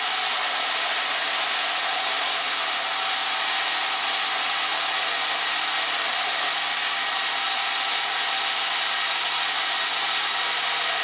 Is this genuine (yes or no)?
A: yes